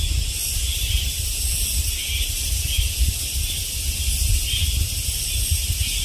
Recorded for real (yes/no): yes